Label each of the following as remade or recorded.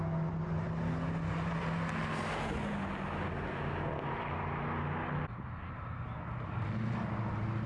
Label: recorded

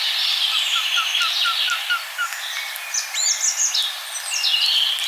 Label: recorded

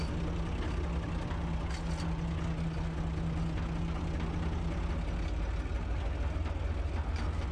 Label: recorded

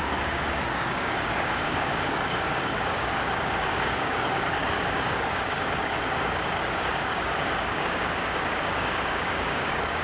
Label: remade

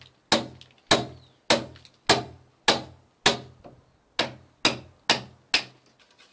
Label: recorded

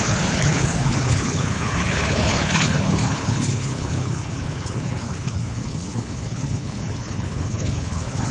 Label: remade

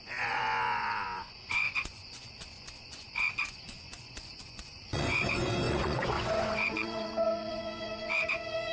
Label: remade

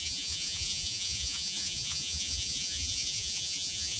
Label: remade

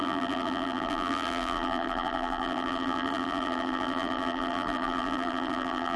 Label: remade